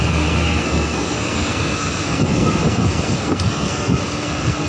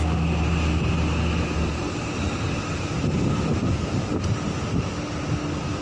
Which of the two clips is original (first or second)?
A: second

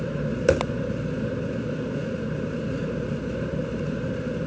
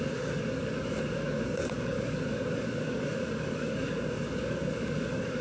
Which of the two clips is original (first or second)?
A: first